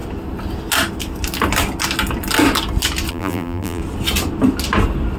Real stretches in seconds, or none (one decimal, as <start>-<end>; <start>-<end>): 0.0-3.1; 3.8-5.2